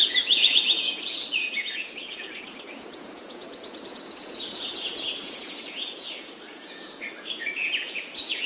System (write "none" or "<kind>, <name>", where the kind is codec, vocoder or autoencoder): vocoder, Vocos